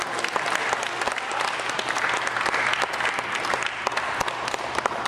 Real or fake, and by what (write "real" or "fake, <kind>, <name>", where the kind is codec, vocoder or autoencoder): real